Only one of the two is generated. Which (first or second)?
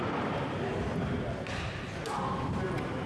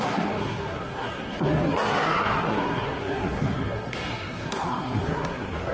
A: second